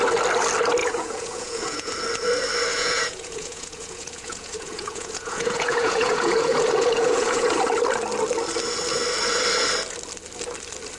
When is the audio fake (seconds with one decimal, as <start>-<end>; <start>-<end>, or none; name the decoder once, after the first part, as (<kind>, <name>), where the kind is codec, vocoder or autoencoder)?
0.8-1.9 (vocoder, Vocos); 2.7-7.6